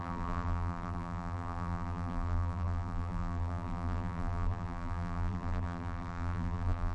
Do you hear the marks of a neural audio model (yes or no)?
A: yes